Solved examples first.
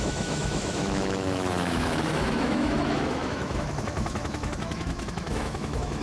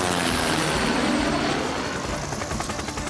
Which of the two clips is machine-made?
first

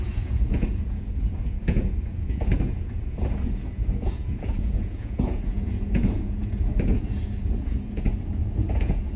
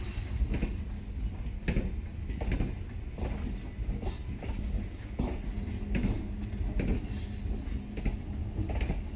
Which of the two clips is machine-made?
first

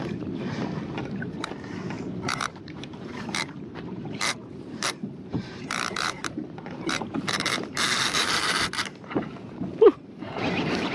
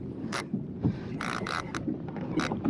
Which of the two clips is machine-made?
first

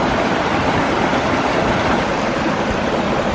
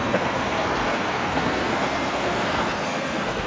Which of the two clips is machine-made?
second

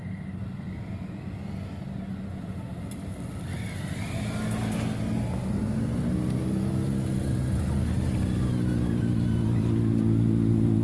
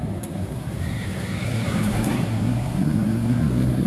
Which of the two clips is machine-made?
second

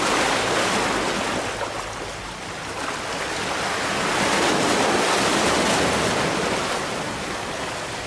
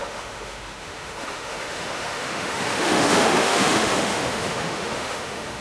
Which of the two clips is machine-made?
second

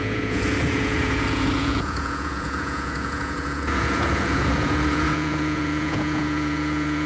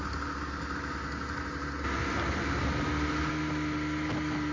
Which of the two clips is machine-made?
first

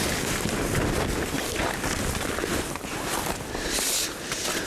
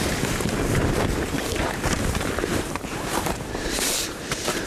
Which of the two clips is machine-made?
second